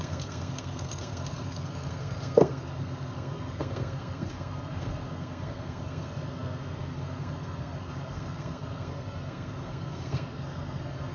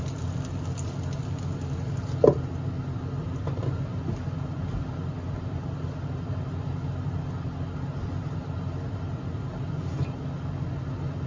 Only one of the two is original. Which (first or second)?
second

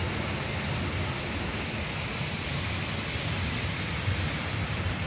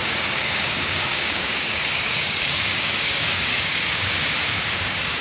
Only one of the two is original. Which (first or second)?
first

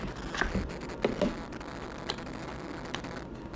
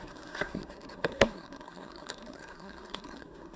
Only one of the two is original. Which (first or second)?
first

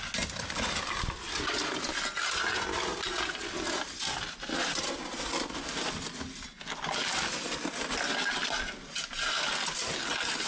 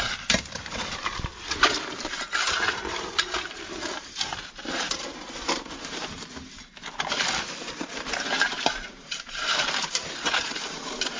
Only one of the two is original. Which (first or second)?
first